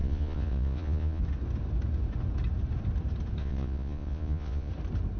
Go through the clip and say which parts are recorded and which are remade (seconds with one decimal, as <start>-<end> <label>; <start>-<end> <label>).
0.0-1.2 remade; 1.2-3.4 recorded; 3.4-4.7 remade; 4.7-5.2 recorded